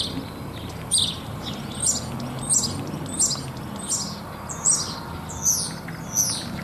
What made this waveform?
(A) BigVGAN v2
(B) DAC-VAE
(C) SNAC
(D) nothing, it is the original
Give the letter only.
D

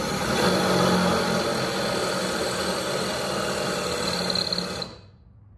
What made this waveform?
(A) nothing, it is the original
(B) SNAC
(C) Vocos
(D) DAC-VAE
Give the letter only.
A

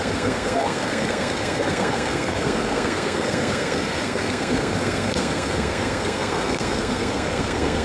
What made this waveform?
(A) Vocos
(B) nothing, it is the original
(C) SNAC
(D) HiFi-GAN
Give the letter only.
C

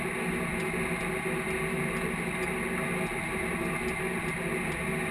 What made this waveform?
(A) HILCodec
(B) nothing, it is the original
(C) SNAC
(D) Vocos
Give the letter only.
B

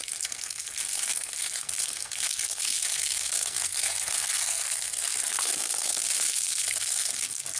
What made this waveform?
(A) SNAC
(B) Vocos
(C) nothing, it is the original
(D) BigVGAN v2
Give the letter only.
A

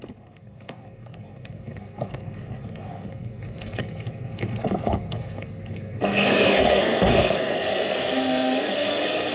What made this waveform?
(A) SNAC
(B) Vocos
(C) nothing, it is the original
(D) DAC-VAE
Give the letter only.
A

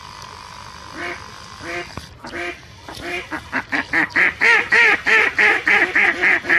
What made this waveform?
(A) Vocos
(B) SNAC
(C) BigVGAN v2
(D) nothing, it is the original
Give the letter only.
D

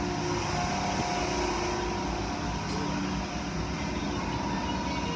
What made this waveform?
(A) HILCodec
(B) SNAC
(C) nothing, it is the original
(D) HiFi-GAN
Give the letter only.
C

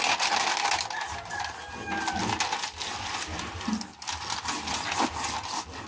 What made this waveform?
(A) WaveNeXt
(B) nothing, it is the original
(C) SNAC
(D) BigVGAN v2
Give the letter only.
B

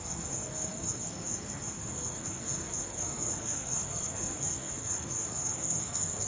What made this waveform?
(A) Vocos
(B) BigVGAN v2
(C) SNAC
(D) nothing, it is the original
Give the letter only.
C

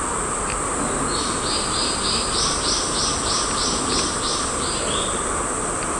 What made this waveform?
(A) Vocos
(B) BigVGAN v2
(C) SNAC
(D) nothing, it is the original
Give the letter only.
D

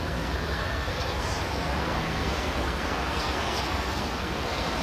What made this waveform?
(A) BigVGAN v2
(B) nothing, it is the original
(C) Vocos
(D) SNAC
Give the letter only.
D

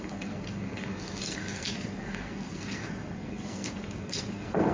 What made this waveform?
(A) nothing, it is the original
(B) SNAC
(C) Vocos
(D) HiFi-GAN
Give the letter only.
B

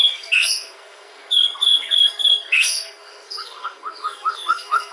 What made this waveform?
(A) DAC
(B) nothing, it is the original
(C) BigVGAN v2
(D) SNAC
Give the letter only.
D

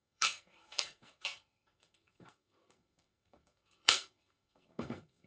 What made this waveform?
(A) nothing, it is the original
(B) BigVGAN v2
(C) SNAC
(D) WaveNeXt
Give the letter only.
C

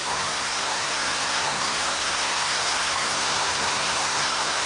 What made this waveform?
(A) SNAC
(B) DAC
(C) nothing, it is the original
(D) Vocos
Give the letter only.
A